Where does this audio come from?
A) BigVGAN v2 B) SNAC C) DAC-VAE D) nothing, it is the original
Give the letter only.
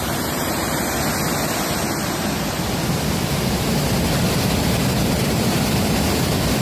D